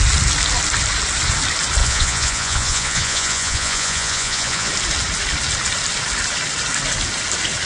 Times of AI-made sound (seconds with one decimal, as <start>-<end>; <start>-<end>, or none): 1.8-4.7